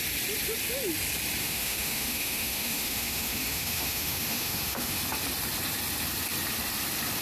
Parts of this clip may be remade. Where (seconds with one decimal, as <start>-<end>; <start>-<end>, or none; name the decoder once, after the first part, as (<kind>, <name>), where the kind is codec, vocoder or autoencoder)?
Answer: 1.4-5.0 (autoencoder, DAC-VAE)